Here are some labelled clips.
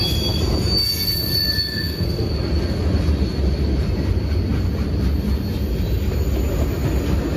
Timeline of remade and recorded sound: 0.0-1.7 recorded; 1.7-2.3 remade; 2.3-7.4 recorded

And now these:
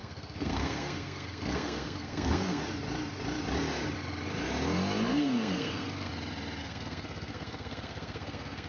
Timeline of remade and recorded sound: 0.0-2.6 remade; 2.6-5.1 recorded; 5.1-6.1 remade; 6.1-6.6 recorded; 6.6-8.7 remade